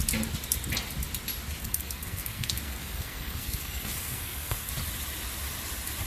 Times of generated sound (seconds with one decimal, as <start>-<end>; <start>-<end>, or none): 1.6-4.7